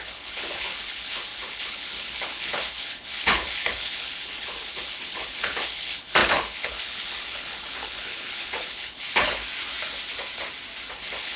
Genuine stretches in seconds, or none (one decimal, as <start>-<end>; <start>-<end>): 9.4-10.9